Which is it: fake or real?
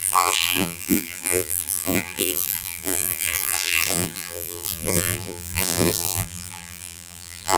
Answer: fake